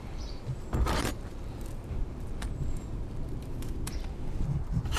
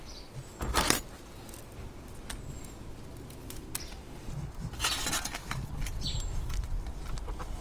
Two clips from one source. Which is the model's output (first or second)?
first